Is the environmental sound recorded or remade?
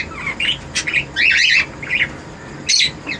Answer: recorded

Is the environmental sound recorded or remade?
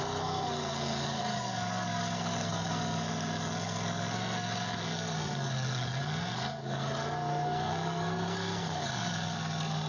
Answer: remade